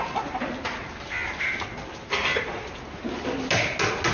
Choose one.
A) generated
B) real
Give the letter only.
B